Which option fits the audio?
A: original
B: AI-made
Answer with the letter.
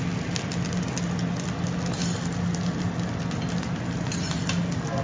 A